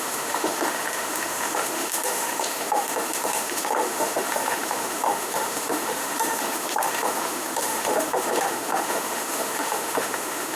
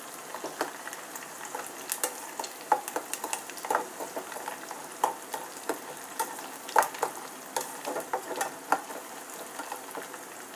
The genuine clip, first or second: second